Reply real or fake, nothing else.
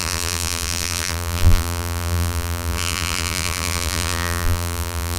fake